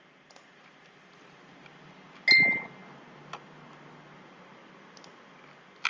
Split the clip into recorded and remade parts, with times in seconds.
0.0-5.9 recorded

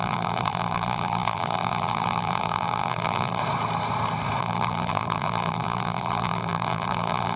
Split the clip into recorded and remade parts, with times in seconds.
0.0-3.4 remade; 3.4-4.4 recorded; 4.4-7.4 remade

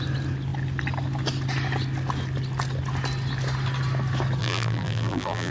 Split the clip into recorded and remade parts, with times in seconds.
0.0-4.4 recorded; 4.4-5.5 remade